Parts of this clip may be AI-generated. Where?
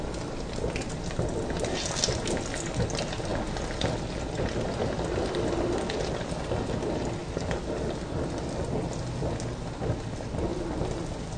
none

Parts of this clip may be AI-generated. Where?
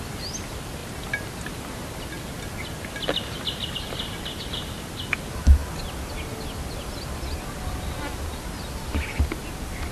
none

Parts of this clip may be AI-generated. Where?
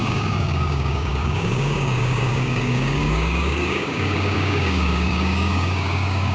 0.0-6.3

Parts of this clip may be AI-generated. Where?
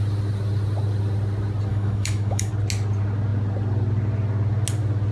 1.7-2.5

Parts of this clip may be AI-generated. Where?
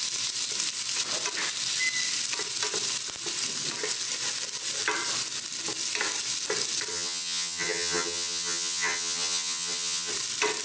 6.9-10.1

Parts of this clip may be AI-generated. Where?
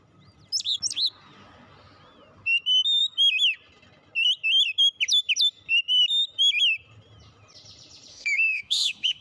8.1-9.2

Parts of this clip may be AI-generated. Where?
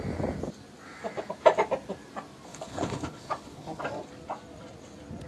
2.5-3.8